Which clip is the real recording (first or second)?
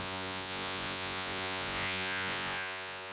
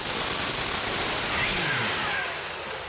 second